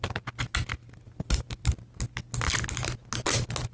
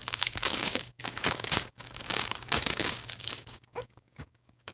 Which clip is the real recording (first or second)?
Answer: first